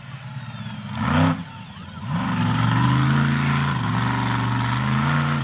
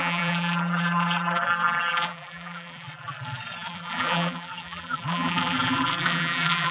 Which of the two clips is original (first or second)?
first